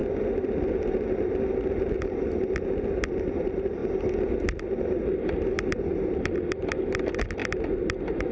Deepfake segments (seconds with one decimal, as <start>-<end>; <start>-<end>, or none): none